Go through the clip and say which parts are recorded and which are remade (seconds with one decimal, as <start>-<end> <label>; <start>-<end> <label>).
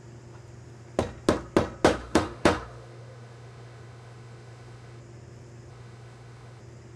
0.0-2.0 recorded; 2.0-5.0 remade; 5.0-5.7 recorded; 5.7-6.6 remade; 6.6-7.0 recorded